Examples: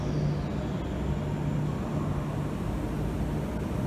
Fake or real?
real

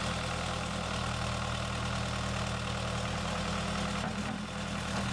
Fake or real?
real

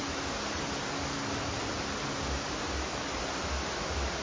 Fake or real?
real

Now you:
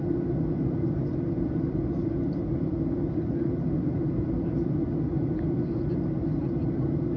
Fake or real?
real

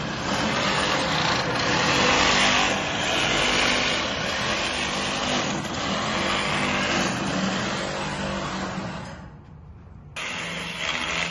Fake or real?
real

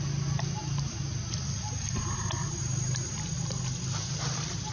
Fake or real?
real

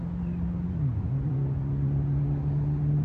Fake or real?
real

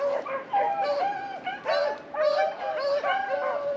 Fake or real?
real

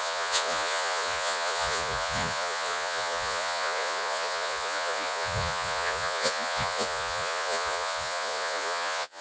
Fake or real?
fake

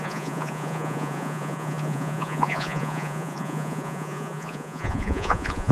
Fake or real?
fake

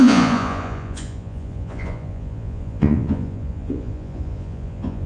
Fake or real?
fake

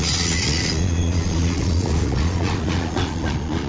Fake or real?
fake